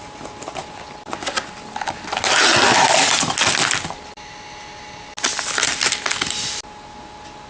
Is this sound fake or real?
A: real